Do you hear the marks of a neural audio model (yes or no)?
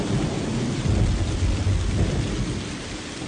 no